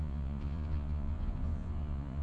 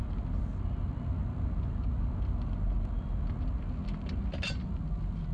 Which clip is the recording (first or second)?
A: second